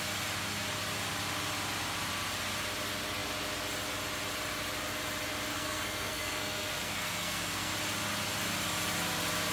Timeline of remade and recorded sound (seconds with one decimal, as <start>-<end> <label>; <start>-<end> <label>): 0.0-5.5 recorded; 5.5-7.7 remade; 7.7-9.5 recorded